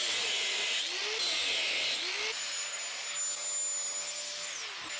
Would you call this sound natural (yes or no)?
yes